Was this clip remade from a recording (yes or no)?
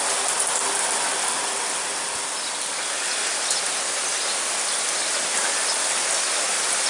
no